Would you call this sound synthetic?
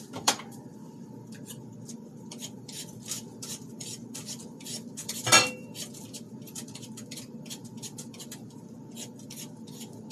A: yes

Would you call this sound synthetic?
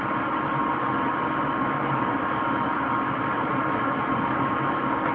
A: no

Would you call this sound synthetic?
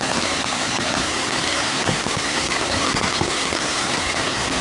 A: yes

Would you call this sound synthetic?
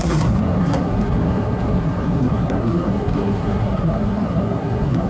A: yes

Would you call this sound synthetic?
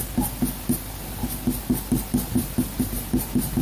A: no